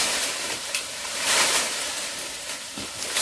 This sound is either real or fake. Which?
fake